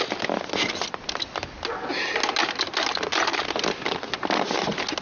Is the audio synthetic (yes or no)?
no